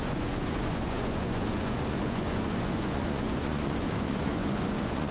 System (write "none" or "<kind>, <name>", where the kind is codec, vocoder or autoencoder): vocoder, Vocos